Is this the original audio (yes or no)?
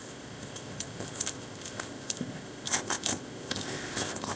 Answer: no